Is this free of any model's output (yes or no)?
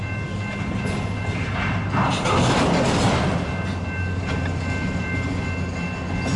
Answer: yes